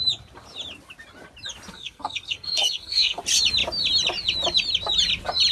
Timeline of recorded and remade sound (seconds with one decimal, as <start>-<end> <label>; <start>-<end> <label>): 0.0-1.7 recorded; 1.7-3.2 remade; 3.2-5.5 recorded